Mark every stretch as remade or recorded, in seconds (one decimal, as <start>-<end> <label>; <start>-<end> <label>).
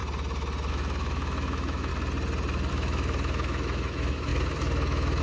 0.0-0.7 recorded; 0.7-1.9 remade; 1.9-2.7 recorded; 2.7-5.2 remade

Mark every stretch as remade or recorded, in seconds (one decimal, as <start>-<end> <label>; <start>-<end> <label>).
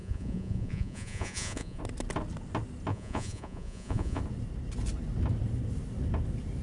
0.0-1.8 remade; 1.8-2.9 recorded; 2.9-4.2 remade; 4.2-6.6 recorded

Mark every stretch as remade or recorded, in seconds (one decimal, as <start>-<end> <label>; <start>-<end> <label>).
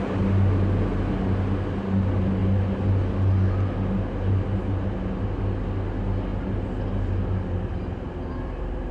0.0-8.9 recorded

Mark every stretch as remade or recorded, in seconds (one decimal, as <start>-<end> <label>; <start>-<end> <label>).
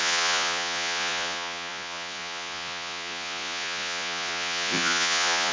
0.0-5.5 remade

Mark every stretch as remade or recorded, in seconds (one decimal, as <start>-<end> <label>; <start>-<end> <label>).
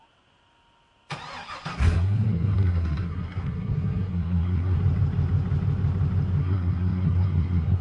0.0-1.7 recorded; 1.7-4.8 remade; 4.8-6.4 recorded; 6.4-7.8 remade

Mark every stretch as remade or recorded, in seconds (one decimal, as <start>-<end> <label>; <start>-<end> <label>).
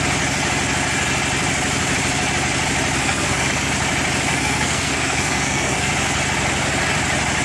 0.0-3.0 recorded; 3.0-3.7 remade; 3.7-4.3 recorded; 4.3-5.9 remade; 5.9-7.4 recorded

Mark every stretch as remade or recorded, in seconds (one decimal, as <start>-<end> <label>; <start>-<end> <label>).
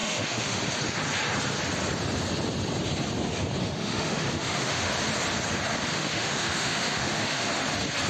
0.0-0.6 remade; 0.6-3.6 recorded; 3.6-4.9 remade; 4.9-5.9 recorded; 5.9-7.5 remade; 7.5-8.1 recorded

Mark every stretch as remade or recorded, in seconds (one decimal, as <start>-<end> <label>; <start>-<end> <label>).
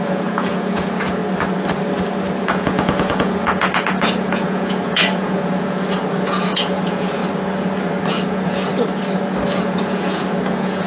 0.0-1.2 remade; 1.2-2.4 recorded; 2.4-7.2 remade; 7.2-8.1 recorded; 8.1-8.7 remade; 8.7-9.6 recorded; 9.6-10.9 remade